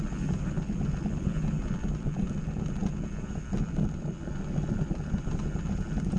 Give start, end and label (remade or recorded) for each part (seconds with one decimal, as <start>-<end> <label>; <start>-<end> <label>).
0.0-6.2 recorded